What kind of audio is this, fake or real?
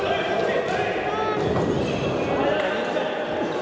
real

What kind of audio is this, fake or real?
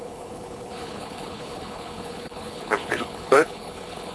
fake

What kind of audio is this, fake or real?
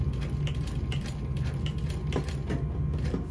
real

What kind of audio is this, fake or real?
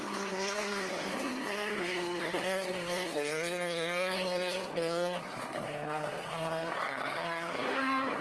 fake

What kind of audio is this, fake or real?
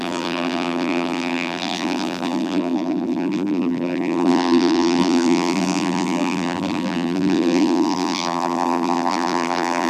fake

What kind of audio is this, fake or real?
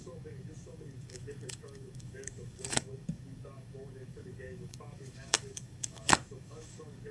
fake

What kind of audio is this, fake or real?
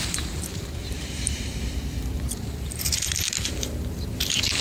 fake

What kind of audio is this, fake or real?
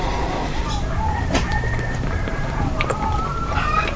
fake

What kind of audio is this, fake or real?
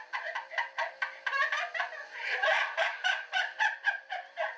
real